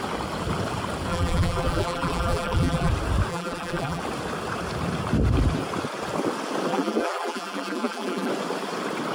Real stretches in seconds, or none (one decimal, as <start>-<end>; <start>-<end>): 0.0-1.1; 2.9-3.3; 4.0-6.7; 8.3-9.1

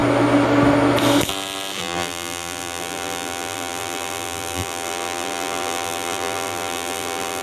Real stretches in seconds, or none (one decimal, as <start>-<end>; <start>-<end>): 0.0-1.8

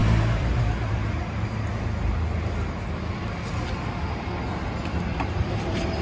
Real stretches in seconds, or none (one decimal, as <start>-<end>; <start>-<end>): 1.0-4.6